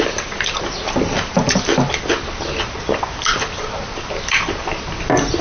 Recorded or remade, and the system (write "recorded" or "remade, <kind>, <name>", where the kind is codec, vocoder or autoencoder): recorded